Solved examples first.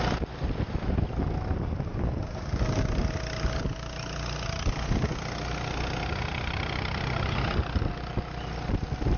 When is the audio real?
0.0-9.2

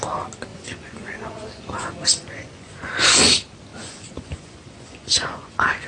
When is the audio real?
0.0-0.5; 3.2-3.7

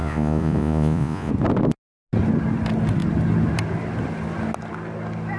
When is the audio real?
1.3-5.4

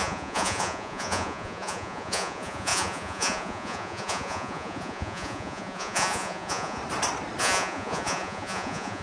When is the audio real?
6.8-7.4